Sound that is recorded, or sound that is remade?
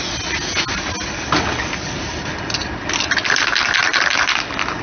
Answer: recorded